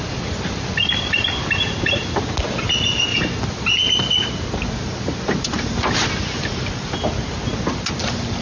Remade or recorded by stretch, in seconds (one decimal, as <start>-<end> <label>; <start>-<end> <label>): 0.0-8.4 recorded